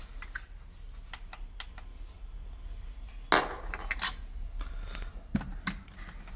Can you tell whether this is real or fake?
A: real